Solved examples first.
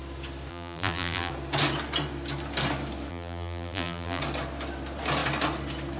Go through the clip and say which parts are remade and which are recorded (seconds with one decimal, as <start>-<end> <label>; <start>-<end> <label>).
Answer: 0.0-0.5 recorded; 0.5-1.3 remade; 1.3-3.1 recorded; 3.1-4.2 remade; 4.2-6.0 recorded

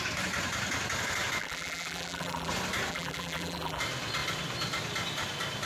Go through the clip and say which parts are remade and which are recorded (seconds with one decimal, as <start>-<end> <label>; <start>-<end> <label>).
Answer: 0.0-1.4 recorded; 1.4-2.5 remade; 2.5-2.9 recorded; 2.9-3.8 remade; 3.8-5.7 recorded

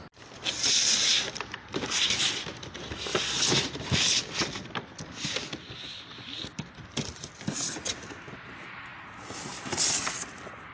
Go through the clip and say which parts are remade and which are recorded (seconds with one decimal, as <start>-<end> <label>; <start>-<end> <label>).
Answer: 0.0-3.1 recorded; 3.1-7.3 remade; 7.3-8.9 recorded; 8.9-10.7 remade

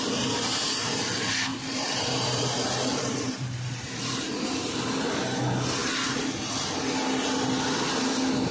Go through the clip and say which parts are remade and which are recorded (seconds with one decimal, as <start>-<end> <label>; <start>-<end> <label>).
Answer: 0.0-1.5 recorded; 1.5-5.2 remade; 5.2-8.5 recorded

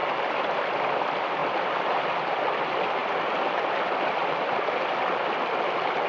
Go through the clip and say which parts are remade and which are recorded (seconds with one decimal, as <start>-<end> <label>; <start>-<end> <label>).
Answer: 0.0-1.4 remade; 1.4-2.6 recorded; 2.6-3.0 remade; 3.0-6.1 recorded

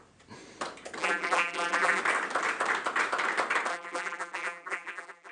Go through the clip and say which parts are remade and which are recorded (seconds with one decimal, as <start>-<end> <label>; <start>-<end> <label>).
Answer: 0.0-1.0 recorded; 1.0-2.0 remade; 2.0-3.7 recorded; 3.7-5.3 remade

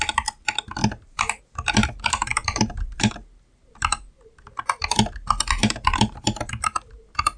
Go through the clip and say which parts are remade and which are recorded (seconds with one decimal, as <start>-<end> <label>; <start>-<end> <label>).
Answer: 0.0-0.8 recorded; 0.8-1.4 remade; 1.4-2.3 recorded; 2.3-3.1 remade; 3.1-5.6 recorded; 5.6-6.4 remade; 6.4-7.4 recorded